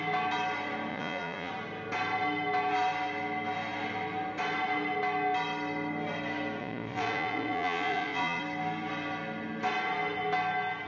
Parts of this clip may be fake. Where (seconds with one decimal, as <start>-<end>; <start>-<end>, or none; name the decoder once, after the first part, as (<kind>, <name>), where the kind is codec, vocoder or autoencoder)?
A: 0.9-1.5 (vocoder, Vocos); 6.6-8.4